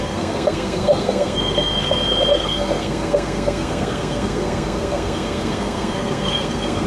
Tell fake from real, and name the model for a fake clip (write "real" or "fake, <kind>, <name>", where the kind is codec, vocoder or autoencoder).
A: fake, codec, SNAC